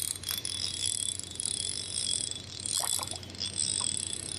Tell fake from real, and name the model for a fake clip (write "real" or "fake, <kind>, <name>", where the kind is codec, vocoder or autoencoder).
real